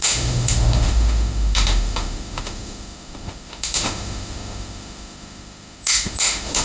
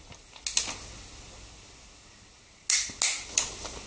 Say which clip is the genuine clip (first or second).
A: second